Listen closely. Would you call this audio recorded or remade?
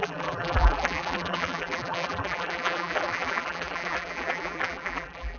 remade